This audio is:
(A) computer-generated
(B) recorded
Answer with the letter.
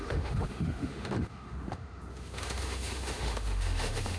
A